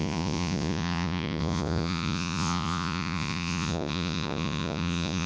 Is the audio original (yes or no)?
no